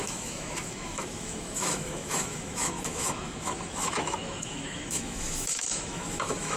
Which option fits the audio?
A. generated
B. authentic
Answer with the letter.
A